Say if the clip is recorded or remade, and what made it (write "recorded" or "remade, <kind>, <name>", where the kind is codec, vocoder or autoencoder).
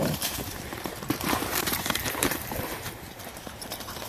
remade, vocoder, BigVGAN v2